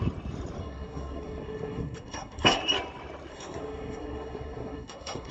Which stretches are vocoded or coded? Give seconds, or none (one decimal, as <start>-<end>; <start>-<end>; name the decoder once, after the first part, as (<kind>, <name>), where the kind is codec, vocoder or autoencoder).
0.6-2.6 (codec, SNAC); 3.3-5.3